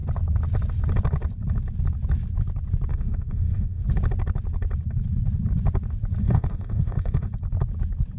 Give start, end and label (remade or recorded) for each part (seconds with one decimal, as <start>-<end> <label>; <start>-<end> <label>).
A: 0.0-2.9 recorded; 2.9-3.8 remade; 3.8-6.2 recorded; 6.2-7.3 remade; 7.3-8.2 recorded